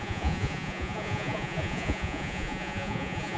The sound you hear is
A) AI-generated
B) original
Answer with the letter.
A